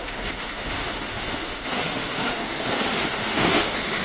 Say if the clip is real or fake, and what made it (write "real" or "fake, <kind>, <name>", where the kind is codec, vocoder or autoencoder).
fake, autoencoder, DAC-VAE